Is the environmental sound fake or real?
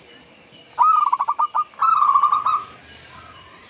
real